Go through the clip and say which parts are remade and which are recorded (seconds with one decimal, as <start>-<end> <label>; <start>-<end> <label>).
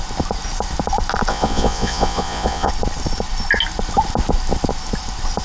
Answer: 0.0-1.3 recorded; 1.3-2.7 remade; 2.7-5.4 recorded